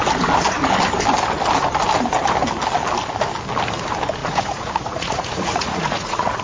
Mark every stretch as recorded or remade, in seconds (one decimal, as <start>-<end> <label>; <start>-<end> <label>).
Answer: 0.0-4.2 recorded; 4.2-6.4 remade

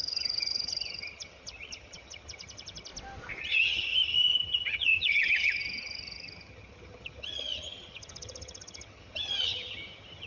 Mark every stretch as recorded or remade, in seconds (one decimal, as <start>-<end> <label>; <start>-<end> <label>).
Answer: 0.0-2.9 remade; 2.9-3.4 recorded; 3.4-10.3 remade

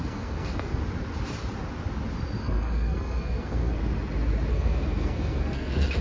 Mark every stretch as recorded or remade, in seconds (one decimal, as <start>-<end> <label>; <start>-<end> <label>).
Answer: 0.0-0.8 remade; 0.8-2.4 recorded; 2.4-3.8 remade; 3.8-4.5 recorded; 4.5-6.0 remade

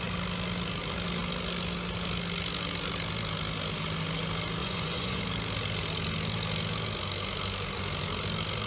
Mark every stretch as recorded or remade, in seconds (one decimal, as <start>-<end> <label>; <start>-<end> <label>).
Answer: 0.0-4.6 recorded; 4.6-5.2 remade; 5.2-8.7 recorded